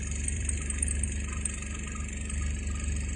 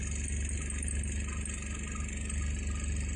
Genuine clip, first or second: second